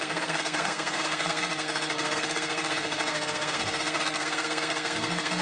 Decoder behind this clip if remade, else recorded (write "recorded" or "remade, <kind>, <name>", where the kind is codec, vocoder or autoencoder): remade, codec, SNAC